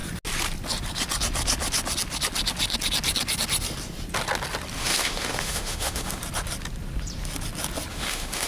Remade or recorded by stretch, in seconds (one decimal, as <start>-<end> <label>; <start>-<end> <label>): 0.0-4.8 recorded; 4.8-6.2 remade; 6.2-7.9 recorded; 7.9-8.5 remade